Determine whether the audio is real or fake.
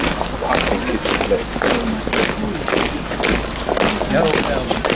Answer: real